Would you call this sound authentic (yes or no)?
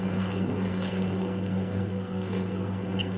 no